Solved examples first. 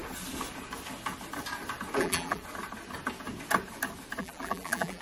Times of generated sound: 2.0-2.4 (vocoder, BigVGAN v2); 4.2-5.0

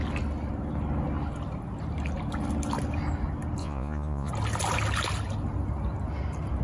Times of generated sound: 3.6-4.3 (vocoder, Vocos)